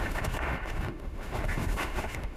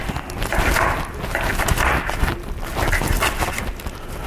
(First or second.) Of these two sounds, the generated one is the first